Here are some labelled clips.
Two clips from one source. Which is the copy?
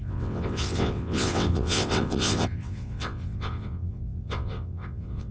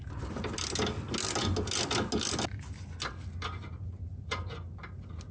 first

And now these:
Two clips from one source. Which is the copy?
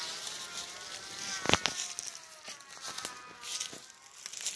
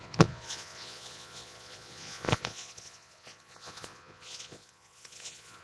second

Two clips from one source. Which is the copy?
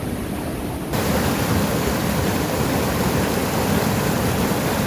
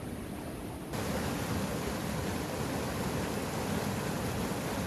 first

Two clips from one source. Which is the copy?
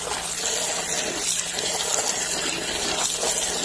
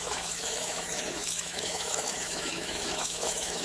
second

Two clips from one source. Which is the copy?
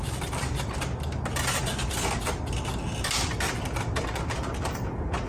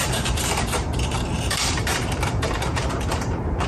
second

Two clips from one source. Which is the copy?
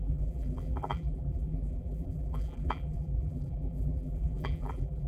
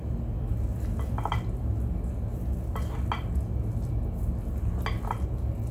first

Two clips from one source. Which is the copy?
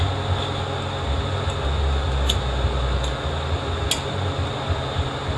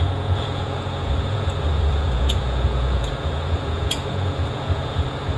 second